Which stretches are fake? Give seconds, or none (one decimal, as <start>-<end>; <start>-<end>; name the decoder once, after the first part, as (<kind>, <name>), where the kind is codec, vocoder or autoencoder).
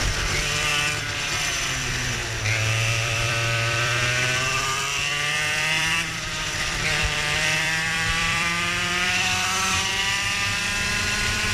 0.0-0.7 (vocoder, BigVGAN v2); 1.4-2.2; 2.7-9.9; 10.9-11.5